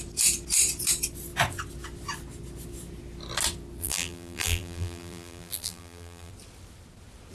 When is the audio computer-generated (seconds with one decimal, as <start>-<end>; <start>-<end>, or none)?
3.8-6.3